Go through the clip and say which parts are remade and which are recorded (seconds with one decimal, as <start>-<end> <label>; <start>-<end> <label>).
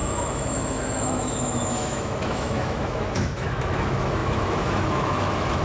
0.0-5.6 remade